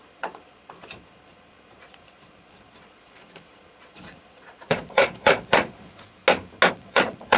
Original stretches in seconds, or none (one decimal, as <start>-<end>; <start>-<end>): 6.2-6.7